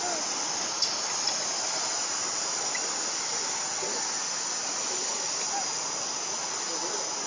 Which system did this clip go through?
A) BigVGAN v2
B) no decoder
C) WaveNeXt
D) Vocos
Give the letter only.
B